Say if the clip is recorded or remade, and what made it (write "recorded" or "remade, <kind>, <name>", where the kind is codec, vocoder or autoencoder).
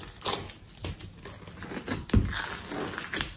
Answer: recorded